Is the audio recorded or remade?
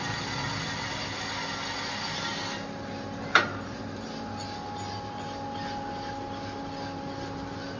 recorded